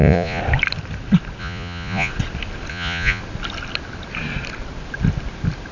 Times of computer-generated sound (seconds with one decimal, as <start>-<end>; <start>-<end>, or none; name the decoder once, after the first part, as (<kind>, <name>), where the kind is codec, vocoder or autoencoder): 0.0-0.4 (vocoder, Vocos); 1.4-2.1; 2.7-3.2